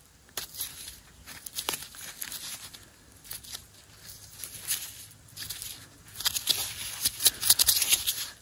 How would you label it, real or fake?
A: real